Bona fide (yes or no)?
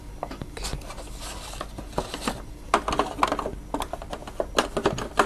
yes